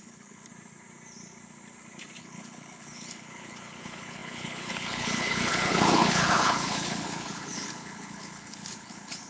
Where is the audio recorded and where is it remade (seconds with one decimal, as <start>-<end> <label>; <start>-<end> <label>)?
0.0-0.5 remade; 0.5-2.2 recorded; 2.2-9.3 remade